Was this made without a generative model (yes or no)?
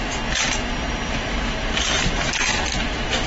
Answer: yes